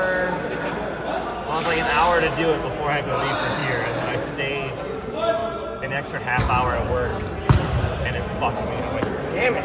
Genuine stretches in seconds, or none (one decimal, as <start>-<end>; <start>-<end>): 0.0-3.6; 4.3-5.4; 6.2-7.1; 8.0-9.6